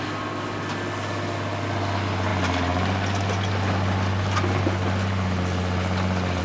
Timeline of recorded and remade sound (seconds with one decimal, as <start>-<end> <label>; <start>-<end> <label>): 0.0-6.4 recorded